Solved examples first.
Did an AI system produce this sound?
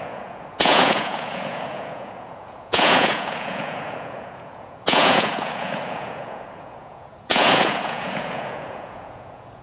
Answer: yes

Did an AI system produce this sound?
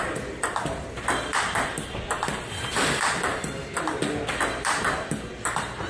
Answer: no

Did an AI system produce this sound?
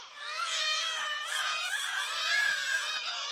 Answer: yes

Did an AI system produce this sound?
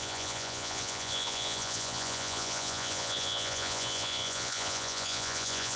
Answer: yes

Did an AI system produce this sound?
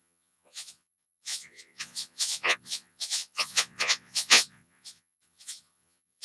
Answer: yes